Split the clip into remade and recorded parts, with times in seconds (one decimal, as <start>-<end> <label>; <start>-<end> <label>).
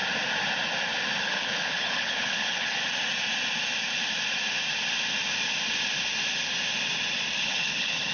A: 0.0-1.2 recorded; 1.2-2.8 remade; 2.8-7.4 recorded; 7.4-8.1 remade